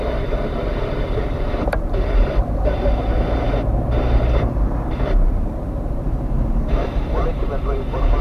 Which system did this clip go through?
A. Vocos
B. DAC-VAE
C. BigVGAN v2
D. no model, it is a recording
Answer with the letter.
C